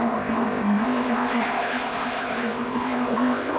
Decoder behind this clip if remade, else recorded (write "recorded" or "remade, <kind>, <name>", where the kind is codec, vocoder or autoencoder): remade, codec, ZipCodec